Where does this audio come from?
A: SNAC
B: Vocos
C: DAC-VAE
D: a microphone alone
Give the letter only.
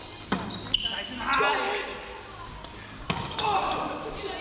D